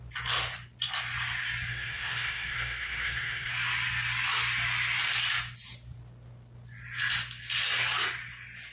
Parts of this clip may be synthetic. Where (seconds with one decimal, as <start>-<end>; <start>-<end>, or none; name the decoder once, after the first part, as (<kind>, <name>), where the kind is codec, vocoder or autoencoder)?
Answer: 1.7-3.5 (codec, SNAC)